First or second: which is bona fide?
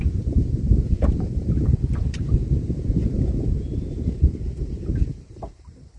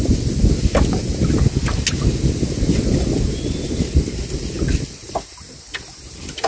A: second